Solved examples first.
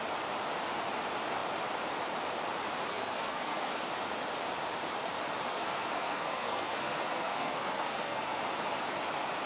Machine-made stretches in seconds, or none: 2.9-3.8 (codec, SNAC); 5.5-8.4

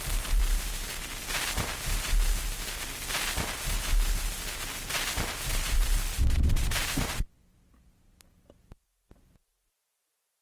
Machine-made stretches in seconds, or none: 5.5-7.2 (vocoder, BigVGAN v2)

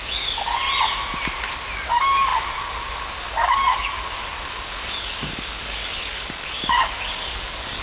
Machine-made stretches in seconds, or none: 0.0-0.6 (codec, DAC); 1.9-7.8

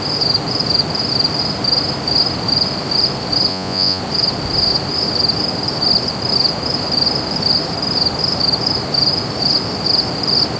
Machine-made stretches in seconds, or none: 3.5-4.0 (vocoder, Vocos)

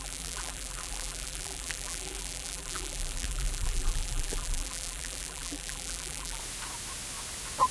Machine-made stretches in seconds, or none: 0.0-6.4 (vocoder, BigVGAN v2)

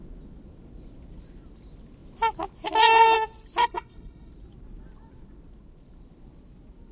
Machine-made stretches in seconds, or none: 3.6-4.3 (codec, HILCodec)

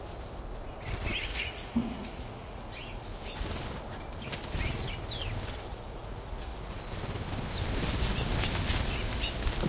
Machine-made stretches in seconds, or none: 1.3-2.6 (vocoder, Vocos); 5.7-6.8

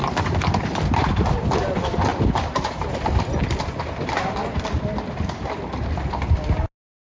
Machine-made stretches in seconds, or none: none